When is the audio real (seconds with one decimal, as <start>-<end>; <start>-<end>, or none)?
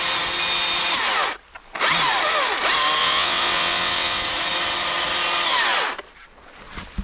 0.0-3.0; 4.2-7.0